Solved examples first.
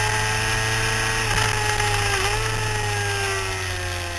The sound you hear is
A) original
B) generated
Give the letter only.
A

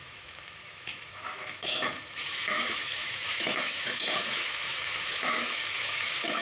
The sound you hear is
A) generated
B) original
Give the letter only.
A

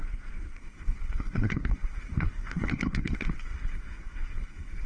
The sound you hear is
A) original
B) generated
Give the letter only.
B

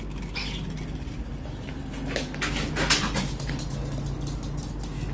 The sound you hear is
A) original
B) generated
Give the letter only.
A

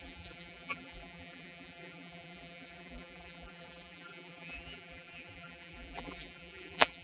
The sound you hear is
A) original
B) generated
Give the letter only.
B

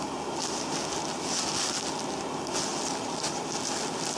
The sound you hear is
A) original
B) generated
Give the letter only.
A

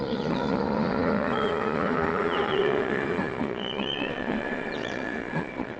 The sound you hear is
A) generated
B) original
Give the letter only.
A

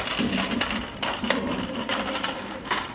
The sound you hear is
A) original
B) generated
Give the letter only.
A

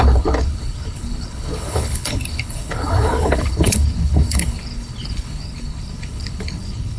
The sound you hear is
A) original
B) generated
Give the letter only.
B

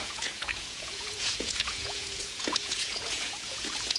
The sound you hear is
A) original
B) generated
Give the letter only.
B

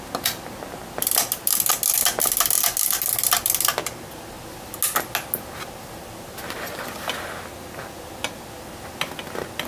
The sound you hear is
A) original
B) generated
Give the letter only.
A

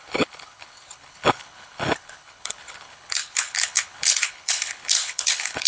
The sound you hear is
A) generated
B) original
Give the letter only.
A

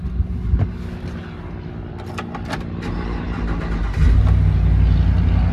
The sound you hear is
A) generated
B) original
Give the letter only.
B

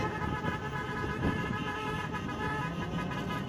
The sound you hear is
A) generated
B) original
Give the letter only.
B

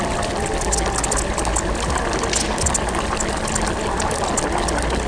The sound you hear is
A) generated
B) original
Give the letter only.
B